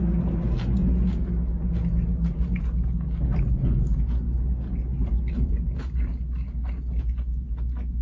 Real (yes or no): yes